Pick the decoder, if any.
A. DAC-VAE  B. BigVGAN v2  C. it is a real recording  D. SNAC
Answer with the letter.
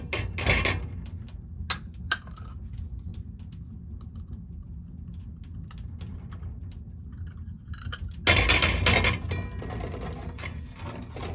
C